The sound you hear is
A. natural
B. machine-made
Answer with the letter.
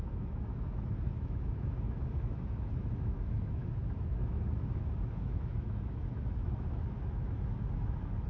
B